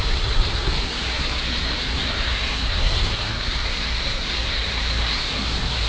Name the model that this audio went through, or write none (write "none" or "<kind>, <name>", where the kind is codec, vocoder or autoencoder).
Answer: codec, SNAC